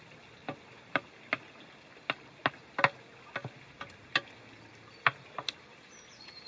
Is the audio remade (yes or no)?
no